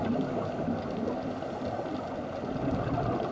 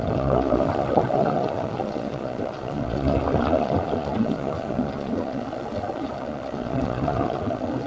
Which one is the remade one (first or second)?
second